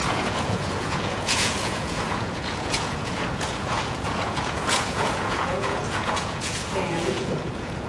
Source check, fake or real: fake